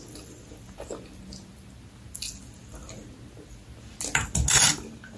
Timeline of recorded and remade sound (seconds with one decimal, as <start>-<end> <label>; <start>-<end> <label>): 0.0-5.2 recorded